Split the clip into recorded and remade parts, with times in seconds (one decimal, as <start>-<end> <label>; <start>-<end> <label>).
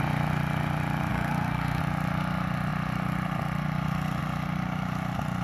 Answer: 0.0-1.1 recorded; 1.1-1.8 remade; 1.8-5.4 recorded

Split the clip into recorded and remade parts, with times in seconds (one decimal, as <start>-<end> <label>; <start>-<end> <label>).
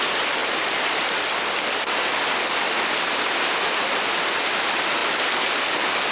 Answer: 0.0-6.1 recorded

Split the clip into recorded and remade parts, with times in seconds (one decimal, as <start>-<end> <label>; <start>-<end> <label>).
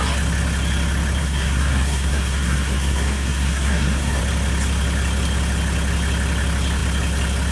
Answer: 0.0-1.2 recorded; 1.2-4.2 remade; 4.2-7.5 recorded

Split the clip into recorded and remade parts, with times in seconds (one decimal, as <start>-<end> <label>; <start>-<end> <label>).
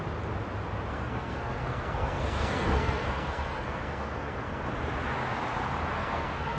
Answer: 0.0-0.9 recorded; 0.9-4.6 remade; 4.6-6.0 recorded; 6.0-6.6 remade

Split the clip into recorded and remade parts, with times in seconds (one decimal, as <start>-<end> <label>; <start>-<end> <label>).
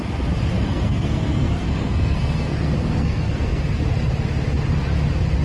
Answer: 0.0-0.5 recorded; 0.5-3.7 remade; 3.7-5.4 recorded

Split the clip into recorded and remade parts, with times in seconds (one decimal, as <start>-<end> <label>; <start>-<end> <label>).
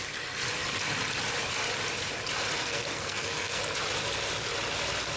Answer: 0.0-2.6 recorded; 2.6-3.6 remade; 3.6-5.2 recorded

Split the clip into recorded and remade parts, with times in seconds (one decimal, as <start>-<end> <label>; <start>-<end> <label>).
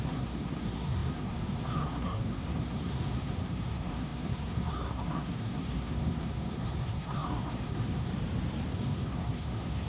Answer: 0.0-8.1 remade; 8.1-8.7 recorded; 8.7-9.9 remade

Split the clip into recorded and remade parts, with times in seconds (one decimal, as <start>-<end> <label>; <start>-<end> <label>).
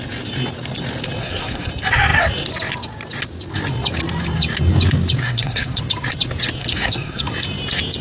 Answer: 0.0-1.2 recorded; 1.2-1.7 remade; 1.7-5.2 recorded; 5.2-5.8 remade; 5.8-6.6 recorded; 6.6-7.2 remade; 7.2-8.0 recorded